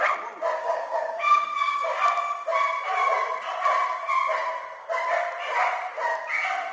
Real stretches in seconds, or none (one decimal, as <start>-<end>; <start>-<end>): 0.0-0.6; 2.0-6.7